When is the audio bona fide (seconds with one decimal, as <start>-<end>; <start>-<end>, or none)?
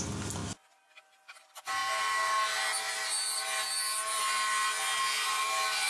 0.0-5.9